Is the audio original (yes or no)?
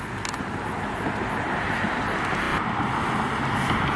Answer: yes